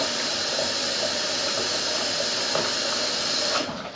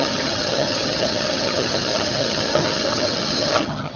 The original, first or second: first